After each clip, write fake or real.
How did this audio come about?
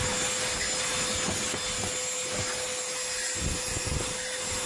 real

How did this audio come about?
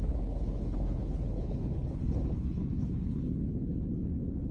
fake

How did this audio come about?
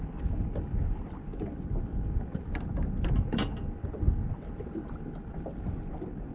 real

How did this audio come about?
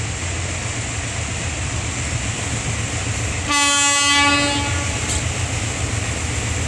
real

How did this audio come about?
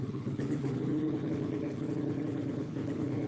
fake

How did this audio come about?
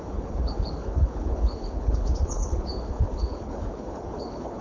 fake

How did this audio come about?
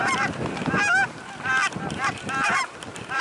real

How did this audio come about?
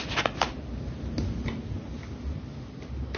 real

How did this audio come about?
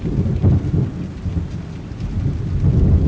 real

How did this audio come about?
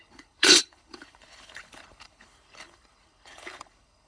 fake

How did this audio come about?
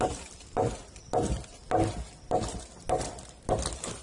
real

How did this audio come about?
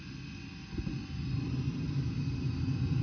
real